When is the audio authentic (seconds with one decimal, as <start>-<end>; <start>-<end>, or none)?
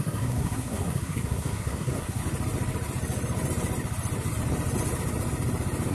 2.2-5.9